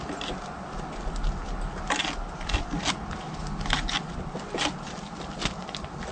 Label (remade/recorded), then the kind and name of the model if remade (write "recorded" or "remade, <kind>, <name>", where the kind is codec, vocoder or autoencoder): recorded